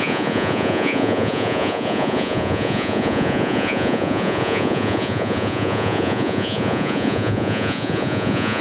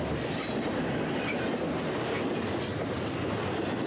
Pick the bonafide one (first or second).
second